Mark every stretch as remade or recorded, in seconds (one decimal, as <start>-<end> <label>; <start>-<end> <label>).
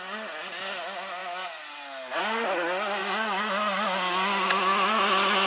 0.0-5.5 recorded